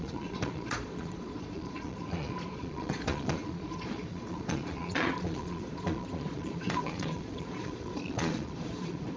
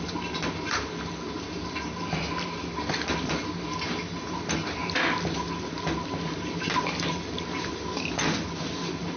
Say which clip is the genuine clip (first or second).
second